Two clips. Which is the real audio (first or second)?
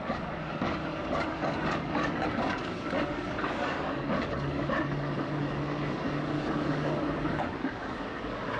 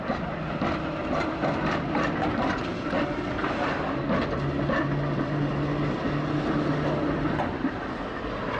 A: second